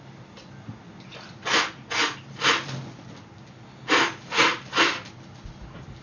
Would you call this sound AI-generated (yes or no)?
no